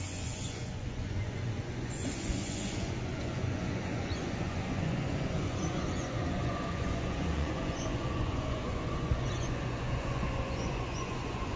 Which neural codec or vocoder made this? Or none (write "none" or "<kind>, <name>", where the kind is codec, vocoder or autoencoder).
vocoder, Vocos